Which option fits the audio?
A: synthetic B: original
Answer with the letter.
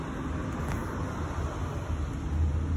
B